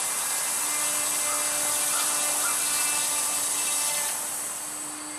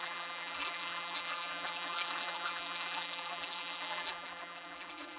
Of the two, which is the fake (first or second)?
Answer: second